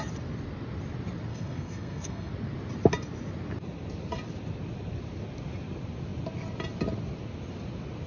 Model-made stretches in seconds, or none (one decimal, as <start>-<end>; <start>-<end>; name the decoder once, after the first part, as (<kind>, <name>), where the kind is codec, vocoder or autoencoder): 1.3-2.3 (codec, SNAC)